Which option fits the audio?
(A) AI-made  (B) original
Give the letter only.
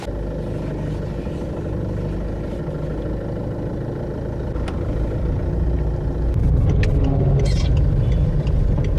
B